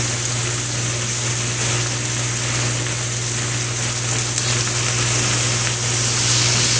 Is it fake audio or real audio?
real